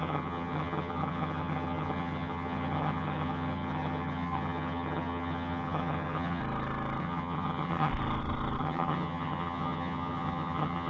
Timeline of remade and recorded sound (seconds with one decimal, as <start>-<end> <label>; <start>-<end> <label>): 0.0-6.4 remade; 6.4-7.0 recorded; 7.0-7.9 remade; 7.9-8.6 recorded; 8.6-10.9 remade